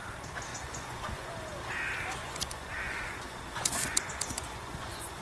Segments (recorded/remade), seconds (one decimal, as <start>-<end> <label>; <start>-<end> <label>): 0.0-0.5 recorded; 0.5-1.3 remade; 1.3-2.2 recorded; 2.2-5.2 remade